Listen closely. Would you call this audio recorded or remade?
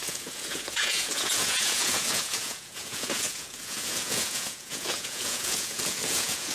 remade